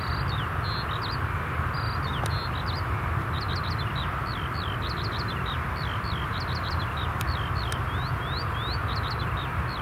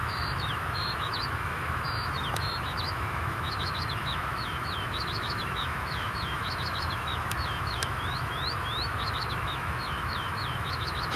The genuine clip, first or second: first